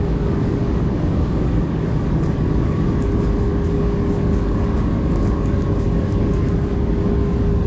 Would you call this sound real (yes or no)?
no